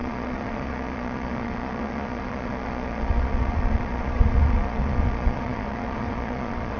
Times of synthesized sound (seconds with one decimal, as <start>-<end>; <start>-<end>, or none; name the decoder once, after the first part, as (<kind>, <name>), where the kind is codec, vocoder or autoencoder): 0.0-6.8 (vocoder, Vocos)